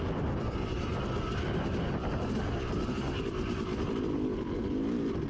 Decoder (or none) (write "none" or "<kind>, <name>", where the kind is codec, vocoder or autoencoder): none